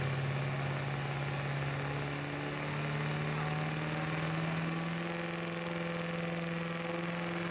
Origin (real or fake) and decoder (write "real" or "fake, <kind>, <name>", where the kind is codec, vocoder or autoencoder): real